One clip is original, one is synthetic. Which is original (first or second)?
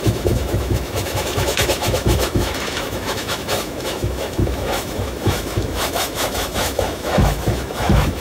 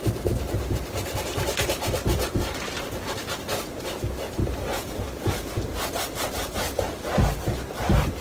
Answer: second